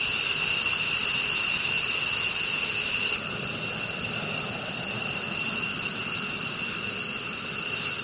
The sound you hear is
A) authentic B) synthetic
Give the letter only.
A